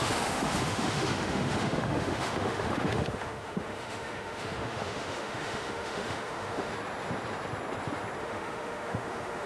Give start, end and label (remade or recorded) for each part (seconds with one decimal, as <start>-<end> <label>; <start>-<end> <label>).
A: 0.0-6.7 remade; 6.7-8.2 recorded; 8.2-9.5 remade